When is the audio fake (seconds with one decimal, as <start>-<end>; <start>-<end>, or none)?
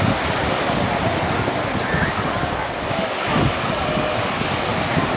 0.4-0.9; 2.1-4.7